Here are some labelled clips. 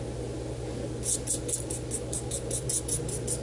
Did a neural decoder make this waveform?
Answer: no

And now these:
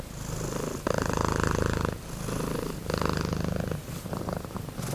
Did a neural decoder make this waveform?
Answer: no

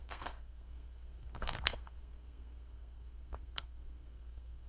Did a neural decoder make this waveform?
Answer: yes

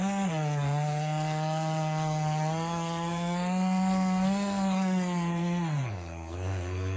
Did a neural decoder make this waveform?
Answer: yes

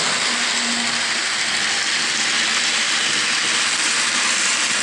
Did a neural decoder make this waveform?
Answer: no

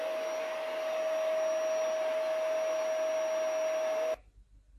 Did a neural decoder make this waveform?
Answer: no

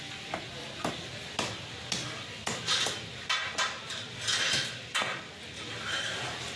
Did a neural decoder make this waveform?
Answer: no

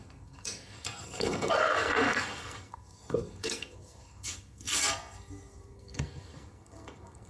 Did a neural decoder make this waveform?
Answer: yes